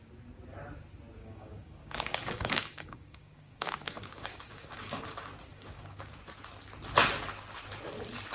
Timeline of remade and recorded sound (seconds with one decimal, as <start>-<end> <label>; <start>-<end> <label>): 0.0-1.2 recorded; 1.2-5.0 remade; 5.0-5.5 recorded; 5.5-6.1 remade; 6.1-8.3 recorded